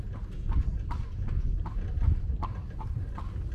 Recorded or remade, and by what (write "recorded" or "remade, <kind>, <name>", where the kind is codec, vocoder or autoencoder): recorded